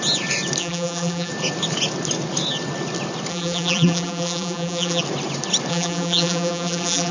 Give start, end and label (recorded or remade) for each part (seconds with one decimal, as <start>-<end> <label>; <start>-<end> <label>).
0.0-0.6 recorded; 0.6-1.3 remade; 1.3-3.3 recorded; 3.3-5.0 remade; 5.0-5.7 recorded; 5.7-7.1 remade